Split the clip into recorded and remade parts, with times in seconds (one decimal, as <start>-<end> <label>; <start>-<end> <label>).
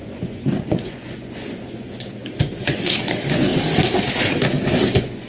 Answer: 0.0-3.5 remade; 3.5-4.8 recorded; 4.8-5.3 remade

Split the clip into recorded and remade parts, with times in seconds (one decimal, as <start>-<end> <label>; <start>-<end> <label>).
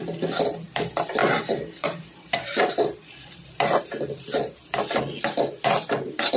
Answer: 0.0-1.2 recorded; 1.2-5.0 remade; 5.0-6.4 recorded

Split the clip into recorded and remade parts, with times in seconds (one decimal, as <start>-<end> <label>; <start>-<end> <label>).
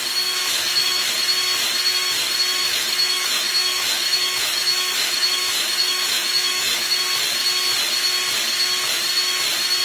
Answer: 0.0-0.4 recorded; 0.4-1.1 remade; 1.1-2.6 recorded; 2.6-7.0 remade; 7.0-9.8 recorded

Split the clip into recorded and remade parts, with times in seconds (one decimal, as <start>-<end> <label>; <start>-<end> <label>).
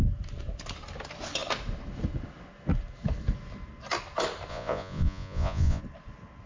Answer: 0.0-4.5 recorded; 4.5-5.8 remade; 5.8-6.5 recorded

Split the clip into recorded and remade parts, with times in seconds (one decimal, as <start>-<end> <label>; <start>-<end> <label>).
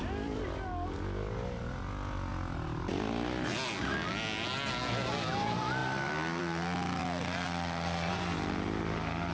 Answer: 0.0-9.3 recorded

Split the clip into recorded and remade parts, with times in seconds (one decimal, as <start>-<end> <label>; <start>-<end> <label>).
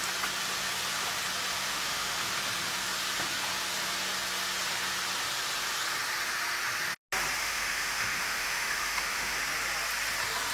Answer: 0.0-1.7 recorded; 1.7-2.3 remade; 2.3-7.4 recorded; 7.4-9.4 remade; 9.4-10.5 recorded